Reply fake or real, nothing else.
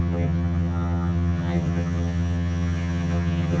fake